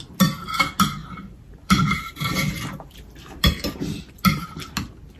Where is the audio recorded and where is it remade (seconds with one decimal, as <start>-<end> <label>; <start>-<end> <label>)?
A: 0.0-1.0 recorded; 1.0-4.1 remade; 4.1-5.2 recorded